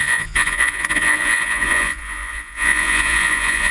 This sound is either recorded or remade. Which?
remade